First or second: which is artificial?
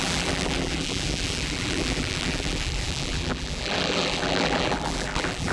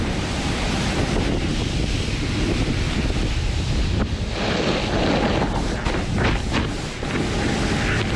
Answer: first